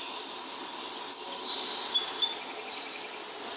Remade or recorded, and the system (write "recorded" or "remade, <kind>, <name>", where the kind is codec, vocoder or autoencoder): recorded